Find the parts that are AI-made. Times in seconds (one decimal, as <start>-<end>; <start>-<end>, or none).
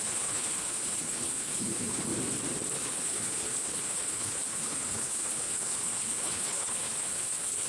0.0-2.1; 2.7-7.7